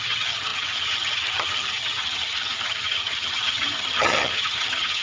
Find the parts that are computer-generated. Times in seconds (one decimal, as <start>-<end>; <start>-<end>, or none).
0.0-5.0